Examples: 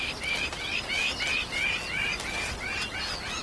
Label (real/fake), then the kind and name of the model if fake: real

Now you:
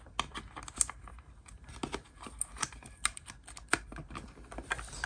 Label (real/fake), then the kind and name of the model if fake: real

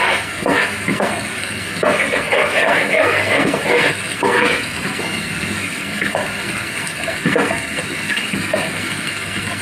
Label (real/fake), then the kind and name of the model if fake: fake, codec, SNAC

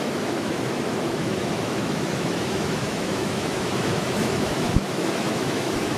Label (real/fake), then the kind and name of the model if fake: fake, autoencoder, DAC-VAE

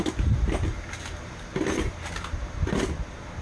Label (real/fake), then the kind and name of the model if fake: fake, vocoder, BigVGAN v2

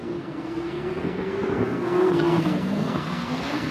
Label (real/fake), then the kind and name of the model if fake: fake, codec, SNAC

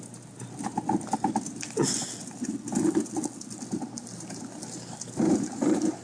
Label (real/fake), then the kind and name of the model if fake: real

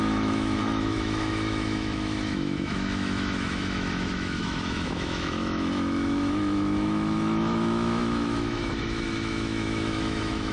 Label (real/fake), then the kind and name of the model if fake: fake, autoencoder, DAC-VAE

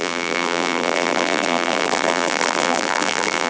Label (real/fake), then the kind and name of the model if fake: fake, vocoder, BigVGAN v2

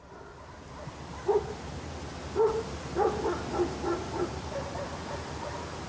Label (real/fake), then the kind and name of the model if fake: real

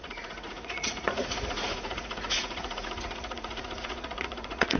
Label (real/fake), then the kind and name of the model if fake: fake, vocoder, Vocos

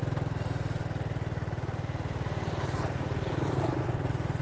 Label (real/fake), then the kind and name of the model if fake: real